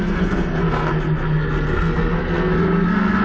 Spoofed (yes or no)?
yes